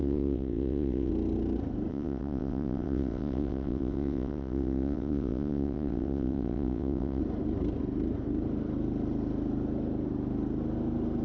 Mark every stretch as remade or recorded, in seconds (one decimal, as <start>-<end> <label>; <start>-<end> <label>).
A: 0.0-1.1 remade; 1.1-1.9 recorded; 1.9-7.2 remade; 7.2-11.2 recorded